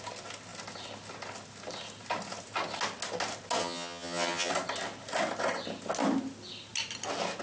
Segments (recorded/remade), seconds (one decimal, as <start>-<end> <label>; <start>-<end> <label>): 0.0-3.6 recorded; 3.6-4.5 remade; 4.5-7.4 recorded